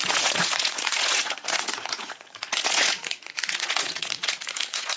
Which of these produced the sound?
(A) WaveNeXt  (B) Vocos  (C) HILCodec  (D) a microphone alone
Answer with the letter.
B